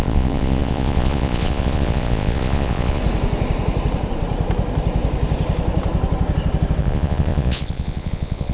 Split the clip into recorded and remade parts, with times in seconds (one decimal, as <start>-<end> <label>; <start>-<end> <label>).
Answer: 0.0-3.0 remade; 3.0-6.8 recorded; 6.8-8.5 remade